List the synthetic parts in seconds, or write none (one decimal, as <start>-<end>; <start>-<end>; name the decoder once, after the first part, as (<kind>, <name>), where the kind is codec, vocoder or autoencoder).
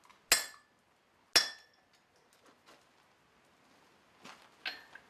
none